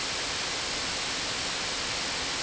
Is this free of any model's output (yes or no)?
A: yes